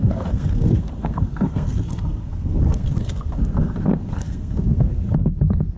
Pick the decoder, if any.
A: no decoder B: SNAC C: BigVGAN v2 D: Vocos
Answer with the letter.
B